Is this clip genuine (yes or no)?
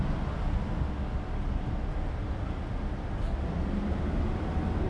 yes